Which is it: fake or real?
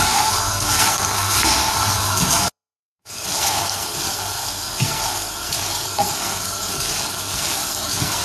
fake